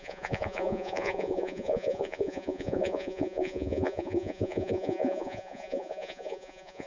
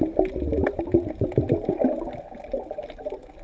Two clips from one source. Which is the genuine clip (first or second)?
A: second